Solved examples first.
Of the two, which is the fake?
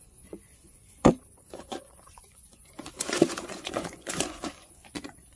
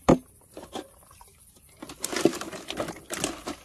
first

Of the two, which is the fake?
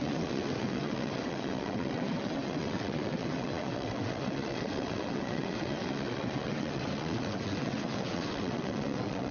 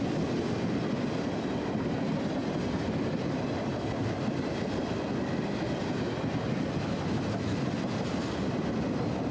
first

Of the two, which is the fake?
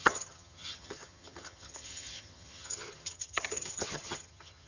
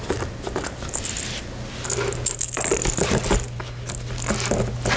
first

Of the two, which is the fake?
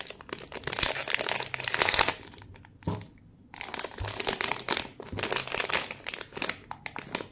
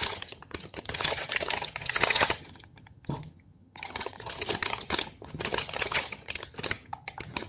second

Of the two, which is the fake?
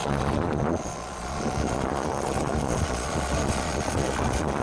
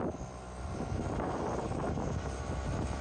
first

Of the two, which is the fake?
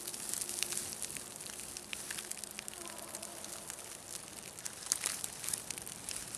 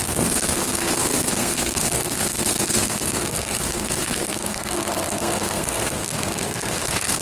second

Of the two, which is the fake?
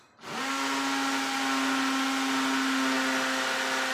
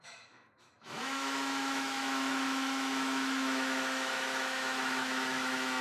second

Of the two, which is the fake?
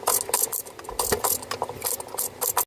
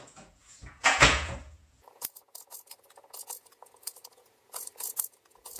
second